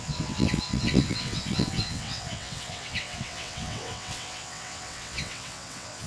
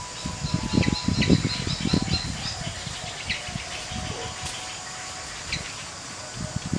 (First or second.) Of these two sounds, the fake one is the first